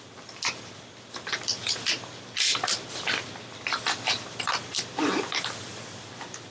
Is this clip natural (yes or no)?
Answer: yes